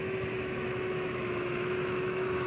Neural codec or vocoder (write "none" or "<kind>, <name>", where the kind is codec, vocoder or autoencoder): autoencoder, DAC-VAE